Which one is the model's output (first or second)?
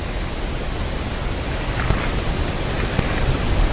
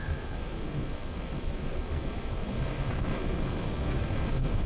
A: second